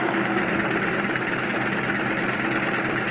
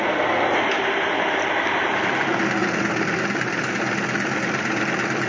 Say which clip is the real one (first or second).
first